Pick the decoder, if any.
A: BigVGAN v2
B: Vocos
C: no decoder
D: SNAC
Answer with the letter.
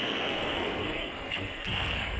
D